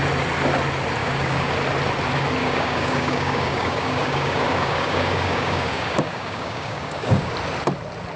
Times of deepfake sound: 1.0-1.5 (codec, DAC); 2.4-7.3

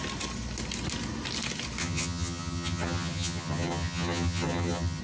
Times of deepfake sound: 1.8-5.0 (vocoder, HiFi-GAN)

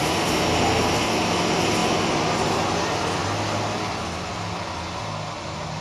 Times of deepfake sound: none